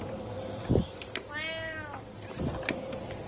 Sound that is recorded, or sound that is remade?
recorded